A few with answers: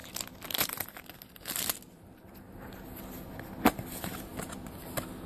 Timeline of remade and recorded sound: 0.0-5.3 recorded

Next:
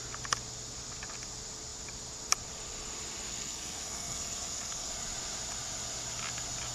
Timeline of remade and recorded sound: 0.0-3.3 recorded; 3.3-4.9 remade; 4.9-6.7 recorded

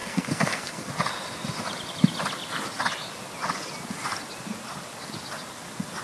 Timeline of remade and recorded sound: 0.0-0.9 remade; 0.9-6.0 recorded